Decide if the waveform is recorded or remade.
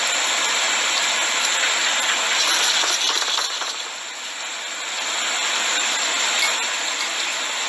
recorded